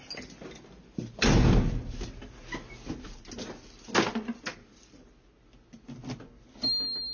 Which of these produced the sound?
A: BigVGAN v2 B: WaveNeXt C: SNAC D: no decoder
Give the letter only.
D